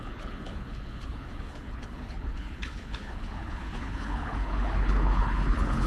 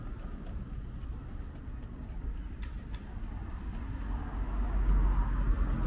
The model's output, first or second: first